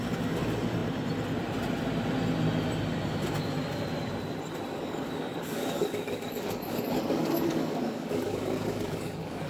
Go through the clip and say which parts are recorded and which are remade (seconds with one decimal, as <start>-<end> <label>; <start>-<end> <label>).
0.0-4.7 recorded; 4.7-9.5 remade